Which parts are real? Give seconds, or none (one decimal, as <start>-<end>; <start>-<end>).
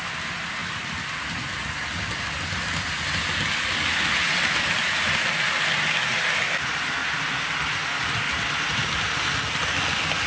0.0-10.3